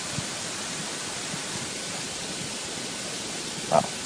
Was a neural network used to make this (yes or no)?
no